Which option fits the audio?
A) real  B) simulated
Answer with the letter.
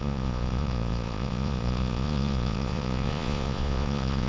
B